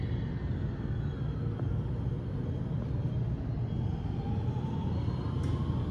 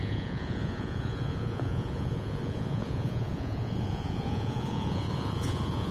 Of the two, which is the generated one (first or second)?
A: second